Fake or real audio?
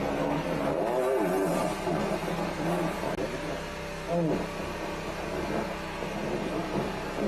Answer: real